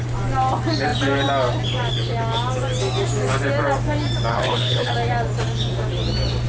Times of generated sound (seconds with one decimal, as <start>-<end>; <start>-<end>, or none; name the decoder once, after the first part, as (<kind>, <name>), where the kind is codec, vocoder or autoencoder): 4.3-4.9 (codec, HILCodec)